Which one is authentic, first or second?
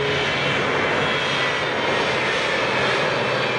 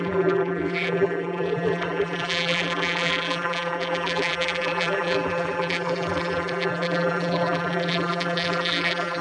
first